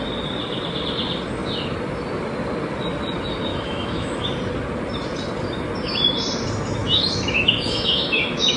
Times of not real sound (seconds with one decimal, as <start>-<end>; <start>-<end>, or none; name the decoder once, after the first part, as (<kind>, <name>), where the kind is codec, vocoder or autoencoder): 3.5-4.2 (autoencoder, DAC-VAE); 6.8-8.6